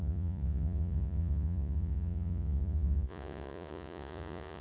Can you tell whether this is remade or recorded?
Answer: remade